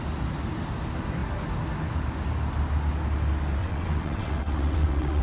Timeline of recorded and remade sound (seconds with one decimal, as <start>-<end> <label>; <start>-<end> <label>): 0.0-3.6 recorded; 3.6-5.2 remade